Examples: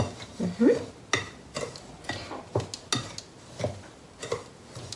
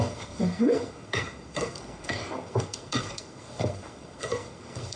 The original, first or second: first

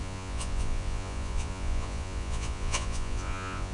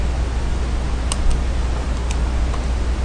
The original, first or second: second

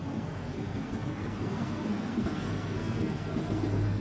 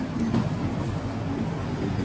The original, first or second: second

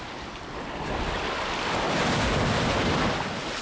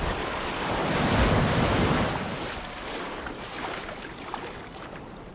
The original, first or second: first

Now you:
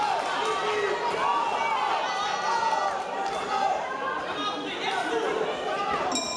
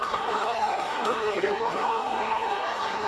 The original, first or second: first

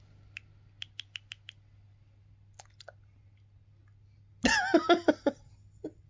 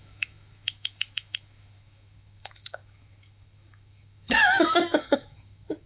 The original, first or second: first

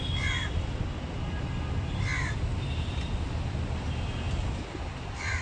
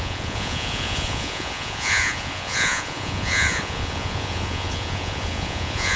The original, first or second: first